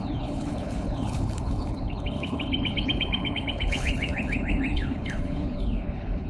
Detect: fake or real fake